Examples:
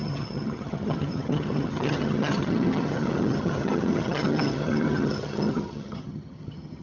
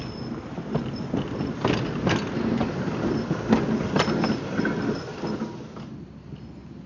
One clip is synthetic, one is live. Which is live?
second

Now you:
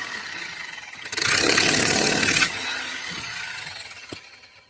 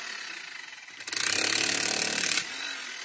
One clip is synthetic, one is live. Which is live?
second